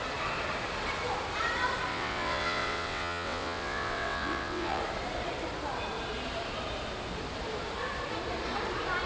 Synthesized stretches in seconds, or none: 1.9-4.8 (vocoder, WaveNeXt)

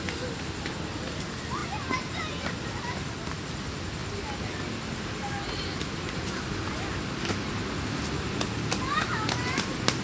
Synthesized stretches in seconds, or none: none

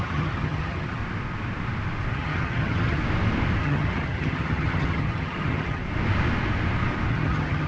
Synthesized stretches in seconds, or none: 0.0-1.0 (vocoder, HiFi-GAN); 2.1-3.0; 3.6-5.8; 7.1-7.7

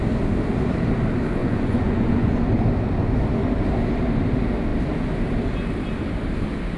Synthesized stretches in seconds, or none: 1.4-2.6 (vocoder, Vocos)

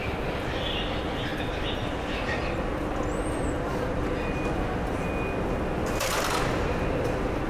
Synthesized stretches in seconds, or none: none

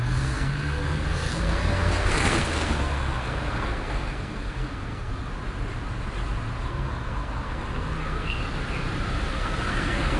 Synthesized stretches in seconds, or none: 0.0-5.1 (codec, SNAC); 6.7-8.4; 9.3-10.2

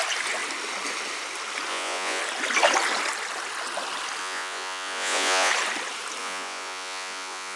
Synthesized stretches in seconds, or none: 1.7-2.2 (vocoder, Vocos); 4.2-5.5; 6.2-7.6